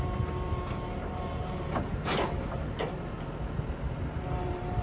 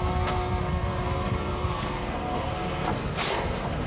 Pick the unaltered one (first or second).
first